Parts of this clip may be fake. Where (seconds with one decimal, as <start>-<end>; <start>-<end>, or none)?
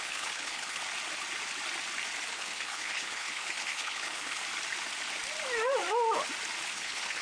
0.0-0.8; 2.3-4.4; 6.7-7.2